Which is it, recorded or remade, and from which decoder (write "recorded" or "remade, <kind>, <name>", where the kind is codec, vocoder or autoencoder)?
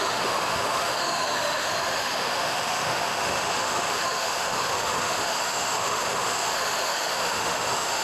remade, autoencoder, DAC-VAE